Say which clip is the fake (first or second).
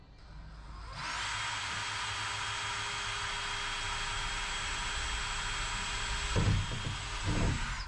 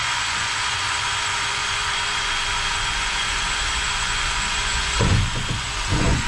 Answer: second